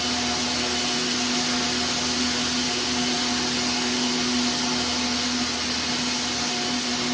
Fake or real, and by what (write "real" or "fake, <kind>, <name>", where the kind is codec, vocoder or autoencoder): real